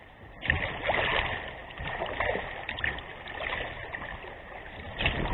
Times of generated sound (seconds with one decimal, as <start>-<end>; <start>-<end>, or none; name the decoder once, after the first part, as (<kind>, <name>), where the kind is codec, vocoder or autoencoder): 1.6-3.1 (vocoder, BigVGAN v2)